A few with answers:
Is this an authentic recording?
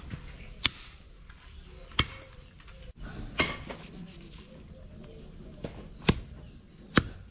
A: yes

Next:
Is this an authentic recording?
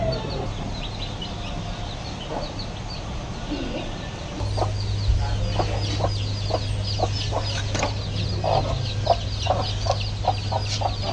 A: yes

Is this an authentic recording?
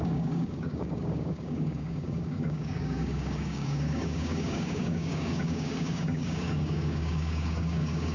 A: no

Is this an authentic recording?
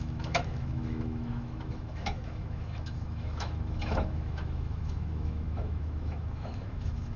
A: no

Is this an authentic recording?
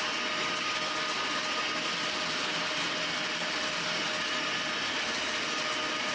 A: yes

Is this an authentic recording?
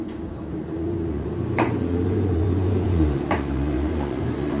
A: no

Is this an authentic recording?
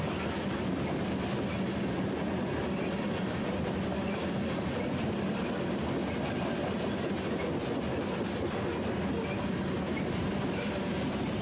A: yes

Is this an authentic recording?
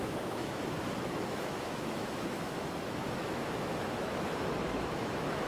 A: no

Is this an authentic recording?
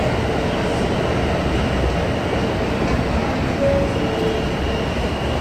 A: yes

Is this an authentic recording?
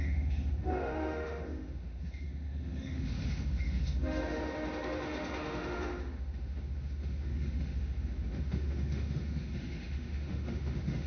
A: no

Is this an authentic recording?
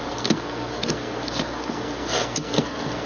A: no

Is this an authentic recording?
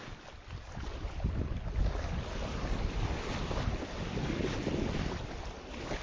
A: yes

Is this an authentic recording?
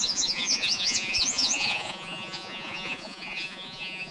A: no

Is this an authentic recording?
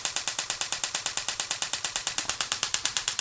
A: no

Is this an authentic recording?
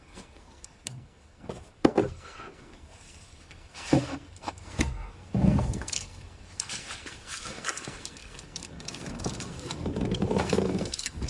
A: no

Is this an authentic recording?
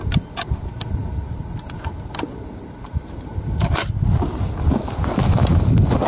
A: yes